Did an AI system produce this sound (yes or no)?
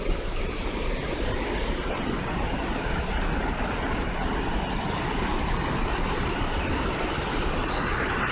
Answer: no